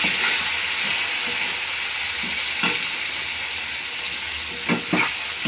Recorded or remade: recorded